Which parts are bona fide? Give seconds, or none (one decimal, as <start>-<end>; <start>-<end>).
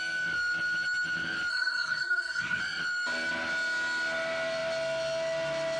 0.0-1.5; 2.6-5.8